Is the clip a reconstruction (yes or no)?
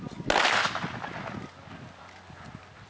no